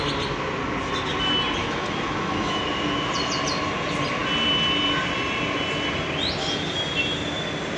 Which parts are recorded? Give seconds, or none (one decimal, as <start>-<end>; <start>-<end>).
0.0-1.6; 2.6-7.8